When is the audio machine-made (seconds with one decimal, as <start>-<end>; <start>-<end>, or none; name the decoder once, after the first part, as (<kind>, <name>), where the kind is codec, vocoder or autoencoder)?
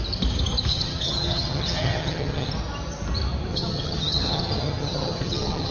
0.7-2.5 (vocoder, HiFi-GAN); 3.5-5.7